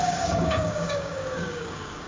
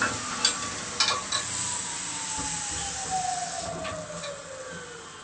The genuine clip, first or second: second